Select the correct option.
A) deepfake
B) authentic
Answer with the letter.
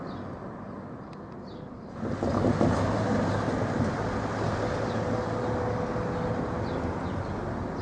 B